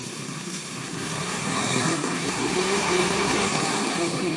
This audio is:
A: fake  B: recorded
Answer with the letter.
A